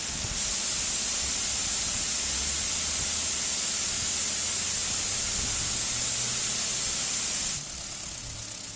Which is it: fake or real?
real